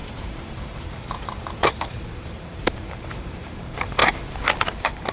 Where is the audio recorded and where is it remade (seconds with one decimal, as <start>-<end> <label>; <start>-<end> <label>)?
0.0-4.0 remade; 4.0-4.6 recorded; 4.6-5.1 remade